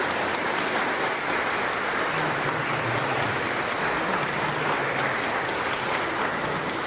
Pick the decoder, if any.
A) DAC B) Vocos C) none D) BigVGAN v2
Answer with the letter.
C